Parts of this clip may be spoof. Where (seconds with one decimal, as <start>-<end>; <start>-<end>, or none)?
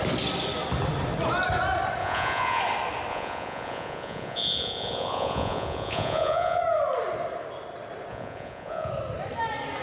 2.0-2.6; 3.1-6.6; 8.1-8.9